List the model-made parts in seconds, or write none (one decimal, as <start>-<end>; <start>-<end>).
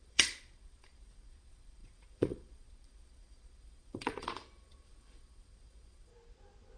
0.0-6.1